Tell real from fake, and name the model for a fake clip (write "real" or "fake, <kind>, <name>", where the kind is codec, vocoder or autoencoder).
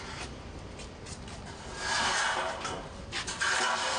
real